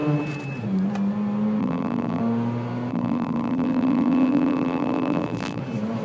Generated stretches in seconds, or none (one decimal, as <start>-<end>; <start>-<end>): 1.6-2.2; 2.9-5.6

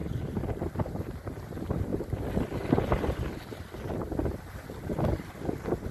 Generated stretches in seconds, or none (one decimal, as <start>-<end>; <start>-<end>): none

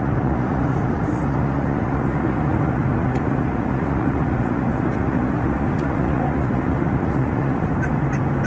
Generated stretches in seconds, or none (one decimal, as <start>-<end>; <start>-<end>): 0.0-7.7

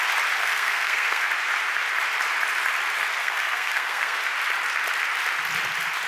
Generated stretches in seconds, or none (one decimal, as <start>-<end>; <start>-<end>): 0.4-1.3; 3.2-4.2